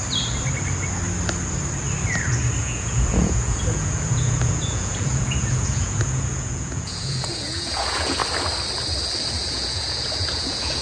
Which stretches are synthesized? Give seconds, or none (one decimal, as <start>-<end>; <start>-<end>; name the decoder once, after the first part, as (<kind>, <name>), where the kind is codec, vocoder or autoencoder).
2.6-8.2 (vocoder, Vocos); 9.5-10.8